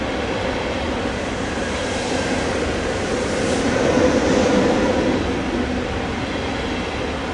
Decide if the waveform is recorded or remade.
recorded